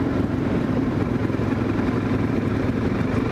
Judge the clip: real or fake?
fake